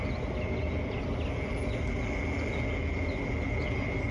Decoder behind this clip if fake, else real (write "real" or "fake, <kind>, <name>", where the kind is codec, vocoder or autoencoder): real